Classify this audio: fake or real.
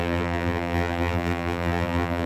fake